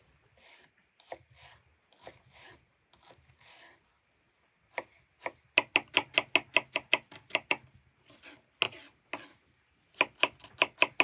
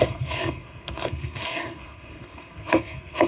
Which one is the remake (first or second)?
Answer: second